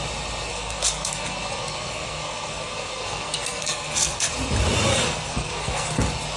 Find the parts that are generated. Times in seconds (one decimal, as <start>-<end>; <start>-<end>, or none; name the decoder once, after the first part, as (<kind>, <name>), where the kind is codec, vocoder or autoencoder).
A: 0.5-4.3 (codec, SNAC); 4.9-6.0